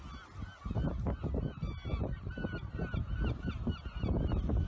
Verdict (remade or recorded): recorded